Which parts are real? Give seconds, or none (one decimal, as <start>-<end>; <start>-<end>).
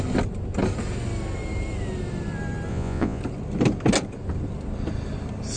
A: 0.0-2.7; 3.2-5.6